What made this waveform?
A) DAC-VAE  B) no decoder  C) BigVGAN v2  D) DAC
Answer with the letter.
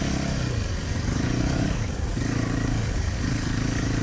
D